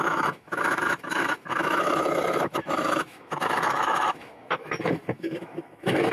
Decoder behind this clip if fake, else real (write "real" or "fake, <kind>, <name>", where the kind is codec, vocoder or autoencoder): fake, autoencoder, DAC-VAE